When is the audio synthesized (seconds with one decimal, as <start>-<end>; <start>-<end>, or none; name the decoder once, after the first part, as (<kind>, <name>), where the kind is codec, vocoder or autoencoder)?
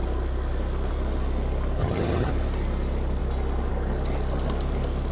1.8-2.3 (vocoder, HiFi-GAN)